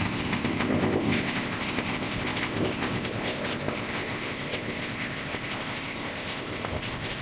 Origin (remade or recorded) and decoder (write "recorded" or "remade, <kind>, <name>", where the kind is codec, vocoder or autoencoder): remade, codec, ZipCodec